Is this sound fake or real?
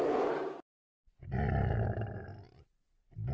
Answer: real